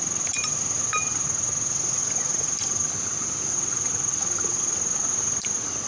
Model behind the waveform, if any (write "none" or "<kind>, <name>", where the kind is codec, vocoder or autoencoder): none